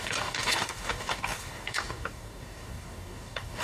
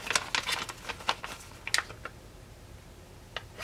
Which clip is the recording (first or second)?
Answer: second